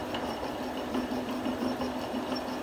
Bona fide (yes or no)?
yes